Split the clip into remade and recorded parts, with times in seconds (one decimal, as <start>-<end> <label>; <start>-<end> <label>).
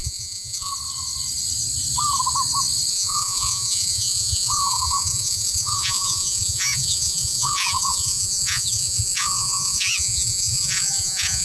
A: 0.0-0.7 remade; 0.7-2.9 recorded; 2.9-11.4 remade